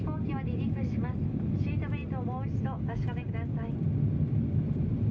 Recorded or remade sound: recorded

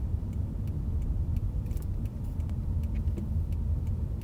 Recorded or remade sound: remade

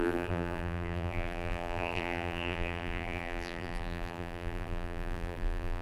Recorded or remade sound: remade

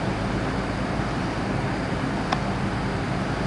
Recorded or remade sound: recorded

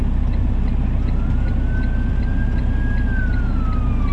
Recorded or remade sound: recorded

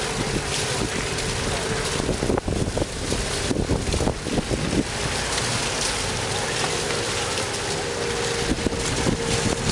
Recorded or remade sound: recorded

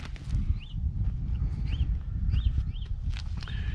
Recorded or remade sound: recorded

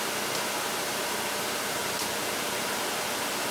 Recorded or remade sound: recorded